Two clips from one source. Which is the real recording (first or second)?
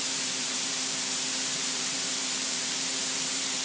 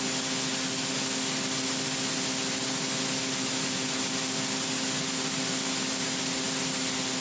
second